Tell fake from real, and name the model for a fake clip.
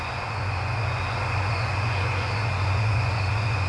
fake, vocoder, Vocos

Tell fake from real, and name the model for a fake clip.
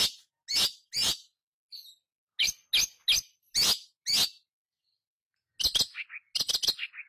real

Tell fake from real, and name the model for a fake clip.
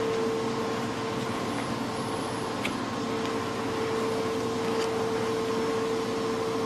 real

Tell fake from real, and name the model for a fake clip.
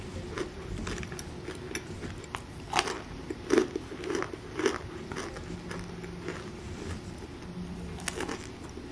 real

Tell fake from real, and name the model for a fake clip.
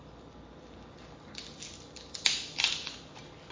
real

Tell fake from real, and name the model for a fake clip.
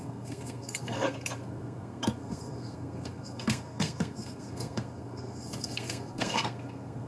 fake, codec, SNAC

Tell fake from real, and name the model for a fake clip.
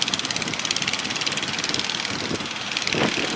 real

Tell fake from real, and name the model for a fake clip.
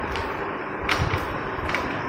fake, vocoder, BigVGAN v2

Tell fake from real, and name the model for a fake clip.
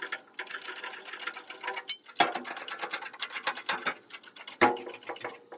real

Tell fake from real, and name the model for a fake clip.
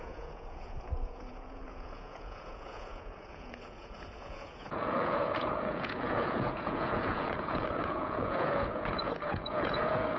fake, vocoder, Vocos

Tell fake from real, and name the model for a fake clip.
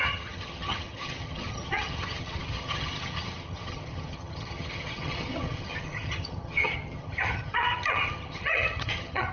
fake, vocoder, HiFi-GAN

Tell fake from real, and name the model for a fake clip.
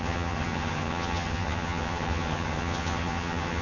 fake, vocoder, HiFi-GAN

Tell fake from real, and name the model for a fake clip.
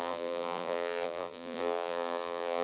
fake, vocoder, BigVGAN v2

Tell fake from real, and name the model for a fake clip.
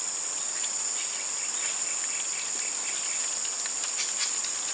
real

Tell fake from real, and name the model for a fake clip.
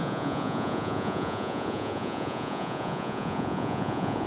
fake, vocoder, Vocos